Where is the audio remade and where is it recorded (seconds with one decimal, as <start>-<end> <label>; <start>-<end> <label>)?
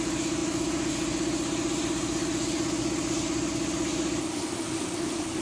0.0-5.4 recorded